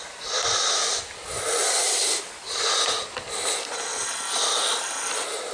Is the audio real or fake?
real